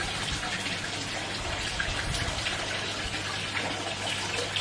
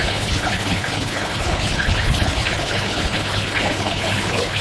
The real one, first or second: first